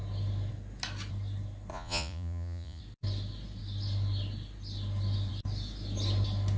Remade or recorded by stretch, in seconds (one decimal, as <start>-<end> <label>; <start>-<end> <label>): 0.0-1.7 recorded; 1.7-2.8 remade; 2.8-6.6 recorded